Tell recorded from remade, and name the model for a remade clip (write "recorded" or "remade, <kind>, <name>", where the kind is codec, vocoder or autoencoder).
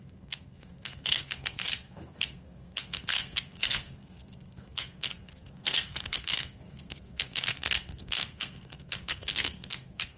remade, codec, SNAC